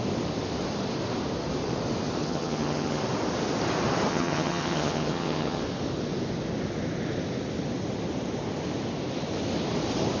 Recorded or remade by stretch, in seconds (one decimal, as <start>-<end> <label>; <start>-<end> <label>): 0.0-2.2 recorded; 2.2-3.0 remade; 3.0-4.1 recorded; 4.1-5.6 remade; 5.6-10.2 recorded